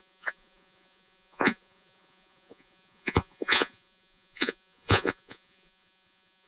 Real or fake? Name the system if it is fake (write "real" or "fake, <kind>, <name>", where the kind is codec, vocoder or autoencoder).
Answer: fake, vocoder, Vocos